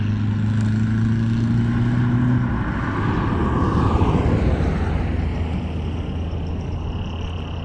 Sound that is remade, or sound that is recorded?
recorded